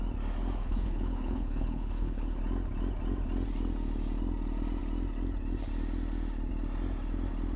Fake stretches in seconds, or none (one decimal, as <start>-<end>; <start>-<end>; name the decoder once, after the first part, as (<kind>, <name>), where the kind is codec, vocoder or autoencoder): 0.6-2.4 (codec, HILCodec)